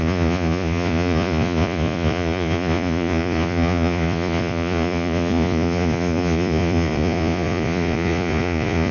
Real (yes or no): no